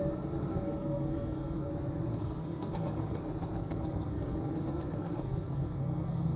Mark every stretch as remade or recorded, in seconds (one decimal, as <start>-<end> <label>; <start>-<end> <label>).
0.0-0.5 recorded; 0.5-1.7 remade; 1.7-2.1 recorded; 2.1-3.2 remade; 3.2-3.6 recorded; 3.6-6.4 remade